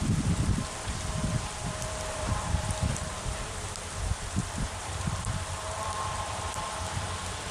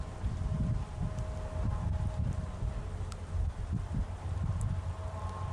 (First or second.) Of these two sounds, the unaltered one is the second